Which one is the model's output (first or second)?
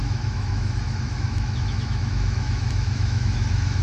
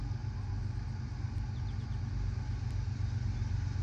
first